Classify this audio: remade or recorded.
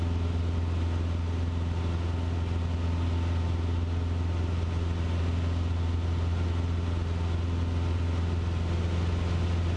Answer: recorded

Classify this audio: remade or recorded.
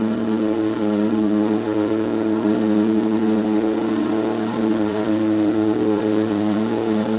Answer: remade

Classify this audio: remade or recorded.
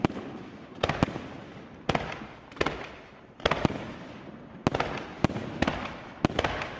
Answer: recorded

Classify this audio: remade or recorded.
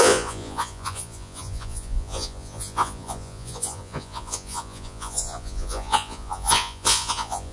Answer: remade